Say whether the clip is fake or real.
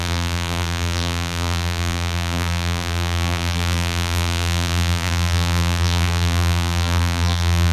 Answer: fake